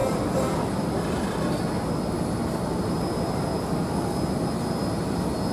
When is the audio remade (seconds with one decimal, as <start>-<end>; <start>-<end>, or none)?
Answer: none